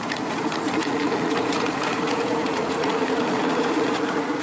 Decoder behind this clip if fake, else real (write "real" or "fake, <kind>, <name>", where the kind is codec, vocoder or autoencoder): fake, vocoder, Vocos